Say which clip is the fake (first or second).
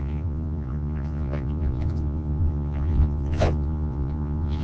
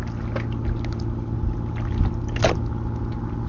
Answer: first